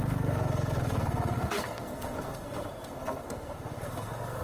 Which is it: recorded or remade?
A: remade